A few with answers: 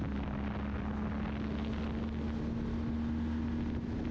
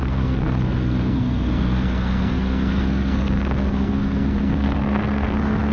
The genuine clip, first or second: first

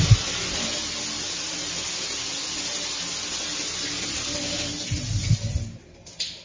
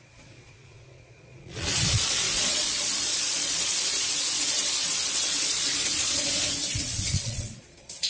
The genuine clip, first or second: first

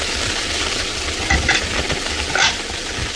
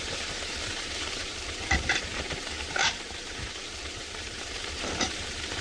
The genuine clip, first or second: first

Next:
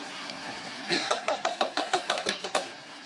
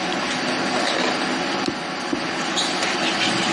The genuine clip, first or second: second